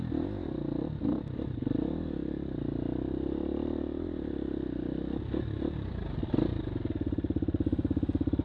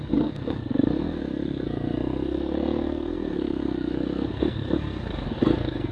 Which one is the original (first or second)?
first